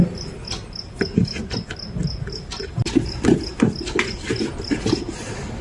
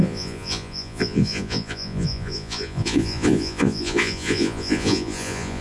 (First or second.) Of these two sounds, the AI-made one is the second